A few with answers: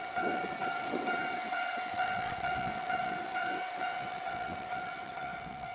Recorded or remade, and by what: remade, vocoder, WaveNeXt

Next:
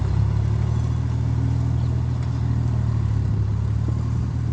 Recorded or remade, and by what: recorded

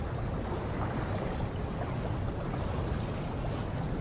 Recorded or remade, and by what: recorded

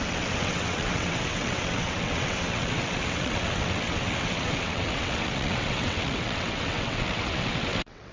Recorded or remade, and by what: remade, vocoder, WaveNeXt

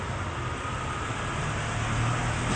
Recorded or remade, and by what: recorded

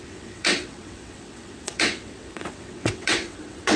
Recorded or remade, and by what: remade, vocoder, WaveNeXt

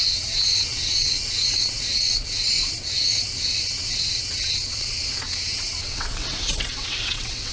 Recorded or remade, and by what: remade, vocoder, WaveNeXt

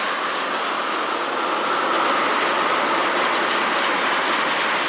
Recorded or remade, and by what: recorded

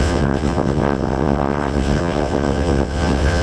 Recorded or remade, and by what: remade, vocoder, WaveNeXt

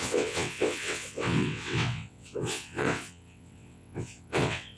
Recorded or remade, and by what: remade, vocoder, WaveNeXt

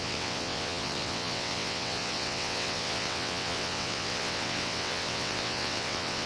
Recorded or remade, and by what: remade, vocoder, WaveNeXt